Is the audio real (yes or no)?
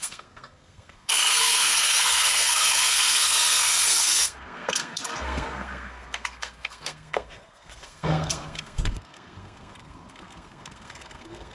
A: no